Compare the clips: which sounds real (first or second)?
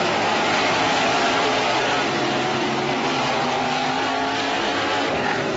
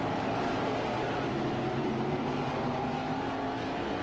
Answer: first